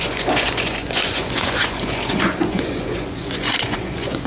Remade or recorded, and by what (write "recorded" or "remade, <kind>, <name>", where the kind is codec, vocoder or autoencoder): remade, vocoder, Vocos